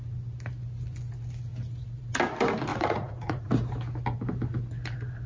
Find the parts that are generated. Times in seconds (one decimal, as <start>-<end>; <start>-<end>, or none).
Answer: 2.7-3.5